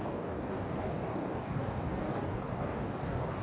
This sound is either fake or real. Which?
fake